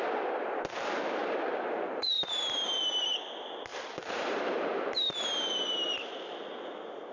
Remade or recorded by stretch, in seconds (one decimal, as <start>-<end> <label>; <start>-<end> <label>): 0.0-1.2 recorded; 1.2-2.8 remade; 2.8-3.7 recorded; 3.7-5.1 remade; 5.1-7.1 recorded